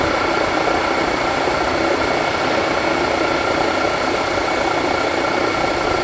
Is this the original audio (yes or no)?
yes